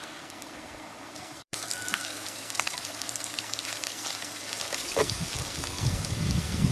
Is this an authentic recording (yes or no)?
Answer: no